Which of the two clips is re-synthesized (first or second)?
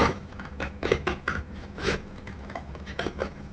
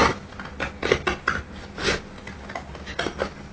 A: first